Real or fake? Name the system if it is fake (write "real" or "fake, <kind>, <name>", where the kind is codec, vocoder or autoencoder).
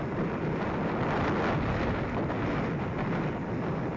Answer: real